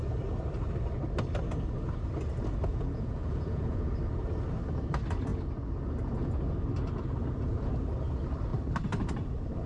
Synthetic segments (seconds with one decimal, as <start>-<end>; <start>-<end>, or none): 2.7-3.9